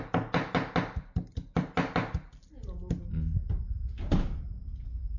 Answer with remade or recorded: recorded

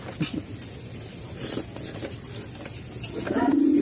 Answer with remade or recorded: recorded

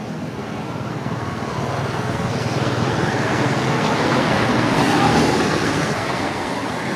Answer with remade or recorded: remade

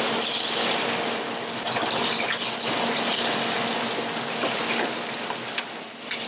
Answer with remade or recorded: recorded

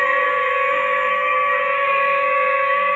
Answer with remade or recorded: remade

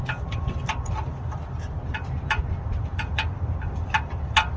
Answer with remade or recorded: remade